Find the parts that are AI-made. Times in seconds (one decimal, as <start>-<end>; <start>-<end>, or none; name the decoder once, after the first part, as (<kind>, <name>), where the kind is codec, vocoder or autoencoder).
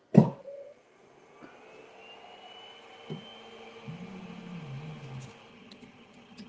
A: 5.5-6.5 (vocoder, HiFi-GAN)